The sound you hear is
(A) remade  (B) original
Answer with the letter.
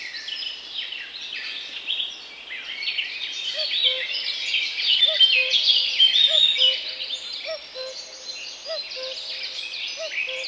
B